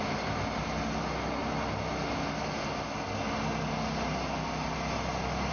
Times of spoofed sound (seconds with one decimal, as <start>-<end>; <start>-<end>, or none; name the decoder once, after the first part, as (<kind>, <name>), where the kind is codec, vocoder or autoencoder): none